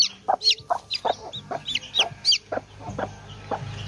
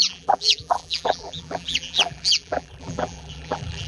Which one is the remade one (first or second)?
second